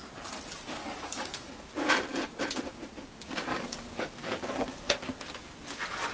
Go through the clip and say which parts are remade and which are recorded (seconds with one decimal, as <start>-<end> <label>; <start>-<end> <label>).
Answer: 0.0-0.8 recorded; 0.8-1.7 remade; 1.7-3.5 recorded; 3.5-4.9 remade; 4.9-6.1 recorded